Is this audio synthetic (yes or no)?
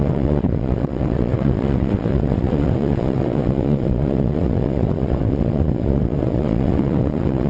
yes